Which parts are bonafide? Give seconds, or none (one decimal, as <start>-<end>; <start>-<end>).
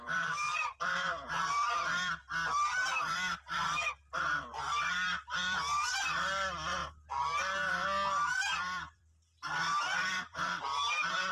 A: 6.8-8.3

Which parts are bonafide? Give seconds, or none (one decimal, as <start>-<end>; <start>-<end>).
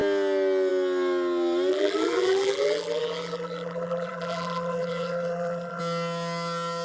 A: 0.0-1.7; 5.8-6.8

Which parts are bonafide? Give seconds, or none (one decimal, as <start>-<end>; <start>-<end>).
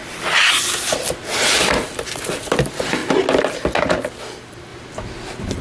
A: 3.0-4.1; 4.7-5.6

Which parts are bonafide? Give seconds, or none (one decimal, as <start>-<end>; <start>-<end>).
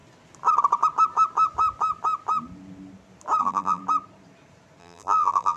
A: 0.0-3.4; 3.8-4.8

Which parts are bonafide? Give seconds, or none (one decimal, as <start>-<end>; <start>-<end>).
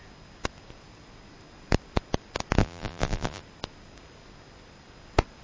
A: 0.0-2.6; 3.4-5.4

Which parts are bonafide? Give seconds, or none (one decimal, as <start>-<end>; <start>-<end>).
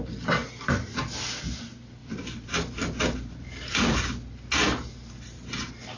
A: 0.0-2.0; 3.0-6.0